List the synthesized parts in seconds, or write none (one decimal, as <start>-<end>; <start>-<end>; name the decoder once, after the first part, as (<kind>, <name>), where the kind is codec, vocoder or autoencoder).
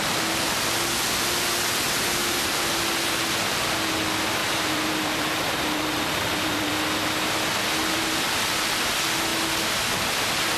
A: 2.2-2.8 (vocoder, BigVGAN v2); 4.4-6.7; 7.8-8.9